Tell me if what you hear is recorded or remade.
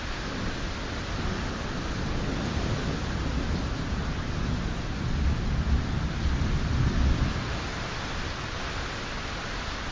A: recorded